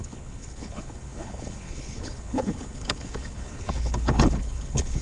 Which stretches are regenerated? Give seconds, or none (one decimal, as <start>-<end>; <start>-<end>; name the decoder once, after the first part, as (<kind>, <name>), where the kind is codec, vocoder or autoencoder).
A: 0.0-5.0 (codec, HILCodec)